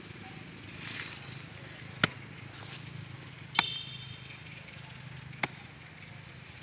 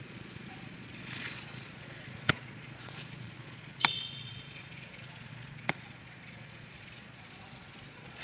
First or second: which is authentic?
first